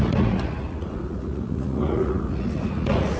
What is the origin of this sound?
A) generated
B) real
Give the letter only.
A